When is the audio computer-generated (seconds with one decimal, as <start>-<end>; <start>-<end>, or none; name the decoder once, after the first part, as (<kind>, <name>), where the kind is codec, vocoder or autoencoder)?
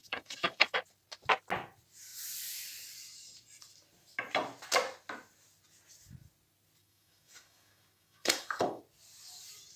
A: 0.0-0.8 (codec, DAC); 6.8-8.8